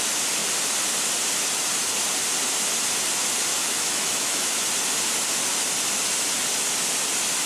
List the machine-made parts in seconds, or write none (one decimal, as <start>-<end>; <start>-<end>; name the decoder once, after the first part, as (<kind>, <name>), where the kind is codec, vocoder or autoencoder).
3.5-4.7 (autoencoder, DAC-VAE)